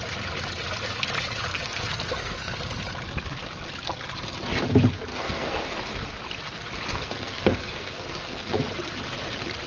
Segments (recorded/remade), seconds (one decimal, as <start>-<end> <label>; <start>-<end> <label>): 0.0-1.5 recorded; 1.5-2.5 remade; 2.5-5.1 recorded; 5.1-5.6 remade; 5.6-6.9 recorded; 6.9-8.6 remade; 8.6-9.7 recorded